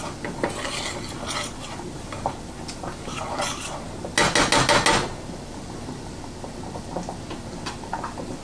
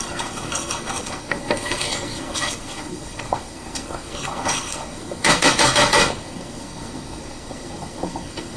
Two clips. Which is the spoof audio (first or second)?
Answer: second